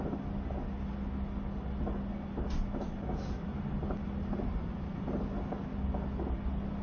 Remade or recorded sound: recorded